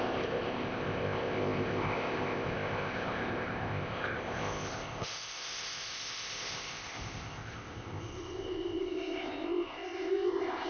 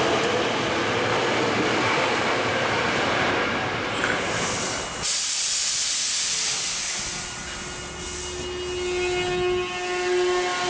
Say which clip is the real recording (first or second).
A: second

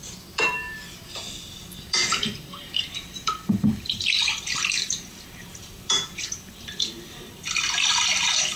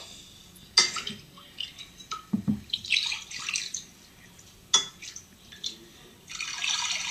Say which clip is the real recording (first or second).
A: second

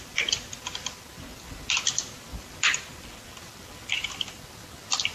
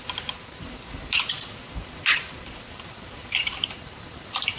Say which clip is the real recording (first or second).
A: first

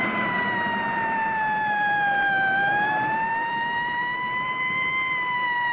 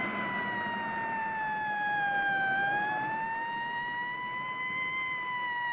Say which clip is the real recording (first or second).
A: second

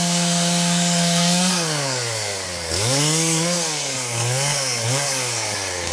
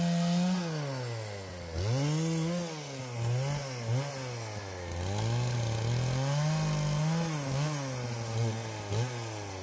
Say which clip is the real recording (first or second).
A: second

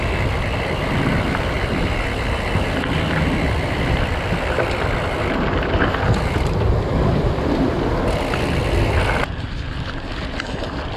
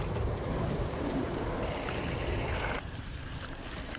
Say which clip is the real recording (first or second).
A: first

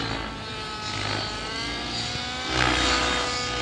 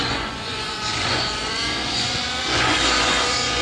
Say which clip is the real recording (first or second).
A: first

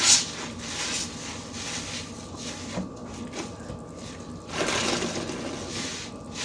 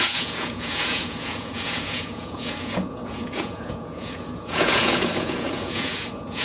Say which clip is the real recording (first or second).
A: first